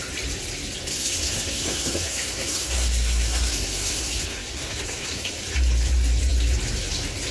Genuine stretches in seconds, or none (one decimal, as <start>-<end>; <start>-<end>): 0.0-0.9; 5.3-7.3